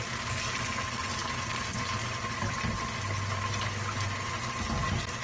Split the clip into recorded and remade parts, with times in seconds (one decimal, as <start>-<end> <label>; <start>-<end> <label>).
0.0-5.2 recorded